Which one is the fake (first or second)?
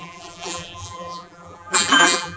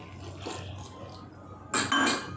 first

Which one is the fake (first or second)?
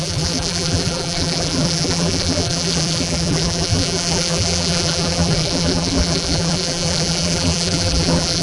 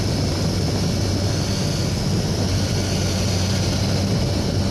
first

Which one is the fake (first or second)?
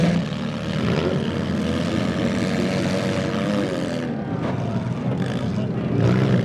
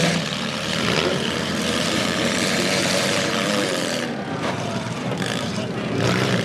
second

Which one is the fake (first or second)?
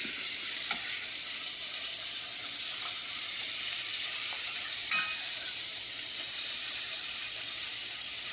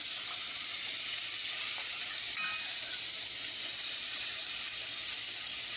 first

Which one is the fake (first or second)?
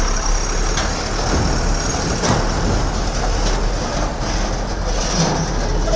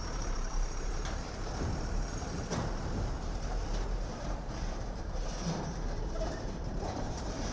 second